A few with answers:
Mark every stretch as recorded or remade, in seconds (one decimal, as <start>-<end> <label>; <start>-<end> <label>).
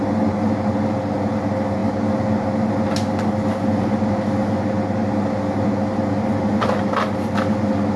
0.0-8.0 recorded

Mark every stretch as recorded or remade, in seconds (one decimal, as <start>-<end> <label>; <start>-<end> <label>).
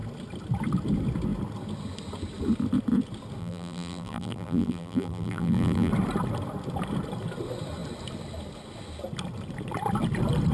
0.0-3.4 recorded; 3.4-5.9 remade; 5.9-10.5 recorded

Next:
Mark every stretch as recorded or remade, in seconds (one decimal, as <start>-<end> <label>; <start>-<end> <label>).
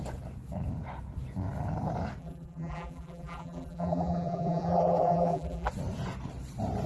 0.0-2.2 recorded; 2.2-5.7 remade; 5.7-6.9 recorded